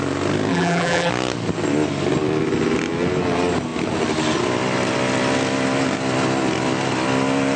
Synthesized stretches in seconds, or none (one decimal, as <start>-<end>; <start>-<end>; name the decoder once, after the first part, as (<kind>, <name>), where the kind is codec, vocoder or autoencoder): 0.5-1.1 (vocoder, BigVGAN v2)